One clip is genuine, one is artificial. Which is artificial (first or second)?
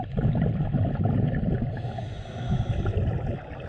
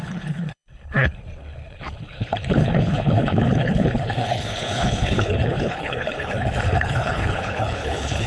second